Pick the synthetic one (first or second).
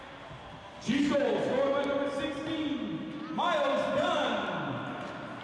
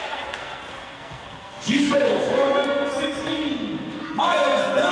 second